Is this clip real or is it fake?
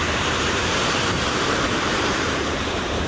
fake